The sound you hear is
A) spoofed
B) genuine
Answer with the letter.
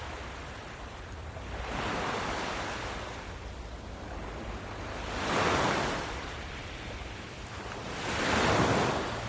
B